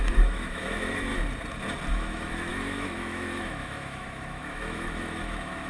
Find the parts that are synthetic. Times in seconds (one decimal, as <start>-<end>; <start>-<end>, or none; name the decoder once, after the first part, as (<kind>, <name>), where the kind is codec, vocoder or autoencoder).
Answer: 0.0-1.1 (autoencoder, DAC-VAE); 1.9-5.7